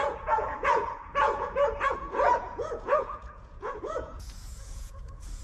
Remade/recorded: remade